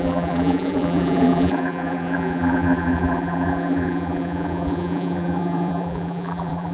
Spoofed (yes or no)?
yes